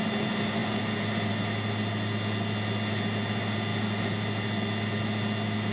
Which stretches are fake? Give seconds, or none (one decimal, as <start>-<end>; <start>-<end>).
none